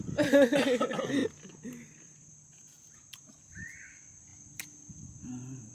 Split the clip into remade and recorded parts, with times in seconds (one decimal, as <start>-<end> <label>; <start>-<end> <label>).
0.0-5.7 recorded